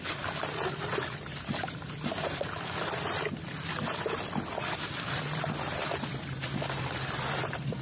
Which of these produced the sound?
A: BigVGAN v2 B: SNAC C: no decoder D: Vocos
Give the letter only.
A